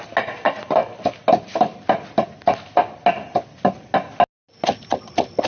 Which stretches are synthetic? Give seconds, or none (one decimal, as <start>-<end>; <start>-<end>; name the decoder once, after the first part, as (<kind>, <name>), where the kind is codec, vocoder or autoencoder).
none